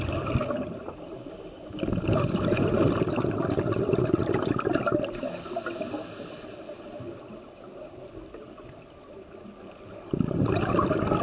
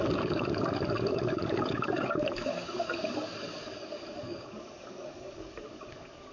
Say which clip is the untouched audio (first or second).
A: first